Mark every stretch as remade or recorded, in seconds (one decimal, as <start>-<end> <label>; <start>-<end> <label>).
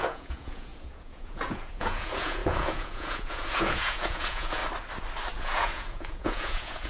0.0-4.6 remade; 4.6-5.4 recorded; 5.4-6.9 remade